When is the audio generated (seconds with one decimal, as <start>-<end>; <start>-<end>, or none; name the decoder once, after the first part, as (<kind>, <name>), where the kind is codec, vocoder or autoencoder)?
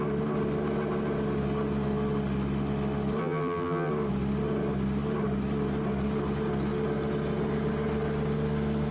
3.2-3.9 (vocoder, BigVGAN v2)